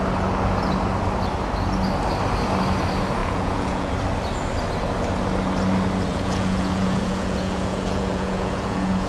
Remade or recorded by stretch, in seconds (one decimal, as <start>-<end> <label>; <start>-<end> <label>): 0.0-3.2 recorded; 3.2-3.9 remade; 3.9-6.1 recorded; 6.1-9.1 remade